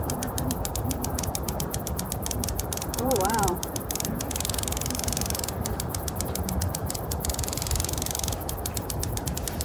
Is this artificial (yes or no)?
yes